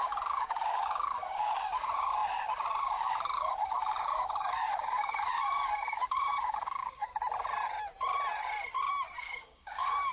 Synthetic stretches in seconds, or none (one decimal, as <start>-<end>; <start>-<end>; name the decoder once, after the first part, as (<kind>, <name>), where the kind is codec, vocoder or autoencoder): 0.0-7.1 (codec, DAC); 9.2-10.1